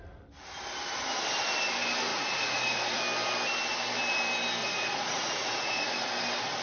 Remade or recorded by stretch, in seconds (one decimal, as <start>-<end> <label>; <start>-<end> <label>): 0.0-2.1 recorded; 2.1-3.0 remade; 3.0-4.6 recorded; 4.6-6.1 remade; 6.1-6.6 recorded